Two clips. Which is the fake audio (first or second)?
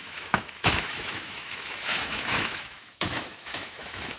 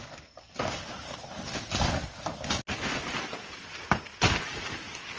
first